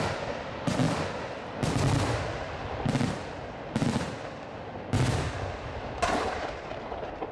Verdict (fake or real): real